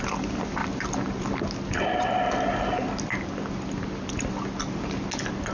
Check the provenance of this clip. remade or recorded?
recorded